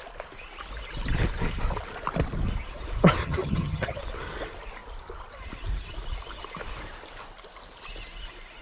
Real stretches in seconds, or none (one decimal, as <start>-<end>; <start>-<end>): 0.0-3.2; 4.0-8.6